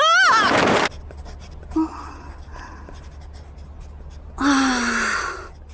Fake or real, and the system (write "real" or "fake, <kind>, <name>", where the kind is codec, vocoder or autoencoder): real